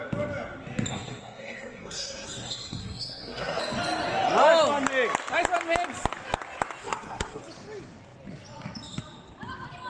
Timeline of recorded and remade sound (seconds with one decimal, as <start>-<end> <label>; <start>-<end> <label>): 0.0-0.9 recorded; 0.9-3.6 remade; 3.6-6.8 recorded; 6.8-7.4 remade; 7.4-9.9 recorded